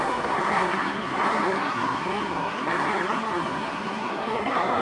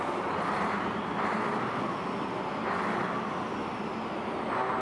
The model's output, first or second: first